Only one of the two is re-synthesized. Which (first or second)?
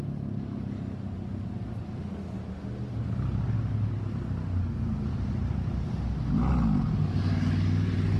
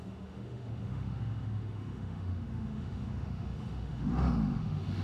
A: second